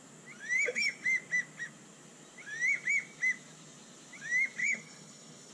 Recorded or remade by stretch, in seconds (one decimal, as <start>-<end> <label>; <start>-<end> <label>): 0.0-4.6 recorded; 4.6-5.5 remade